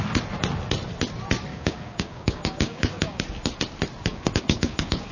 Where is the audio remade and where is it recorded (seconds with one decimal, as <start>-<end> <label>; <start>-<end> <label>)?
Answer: 0.0-1.5 recorded; 1.5-3.2 remade; 3.2-4.1 recorded; 4.1-5.1 remade